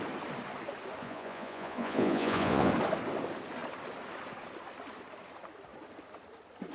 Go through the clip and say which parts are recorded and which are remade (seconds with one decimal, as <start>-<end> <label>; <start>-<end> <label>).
0.0-1.0 recorded; 1.0-2.7 remade; 2.7-6.7 recorded